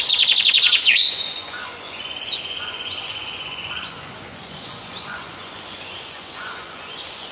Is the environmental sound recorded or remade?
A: remade